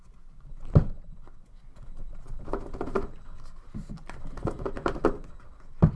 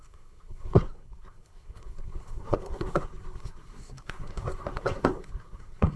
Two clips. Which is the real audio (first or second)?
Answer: first